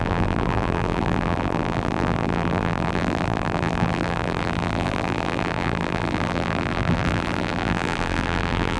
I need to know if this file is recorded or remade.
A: remade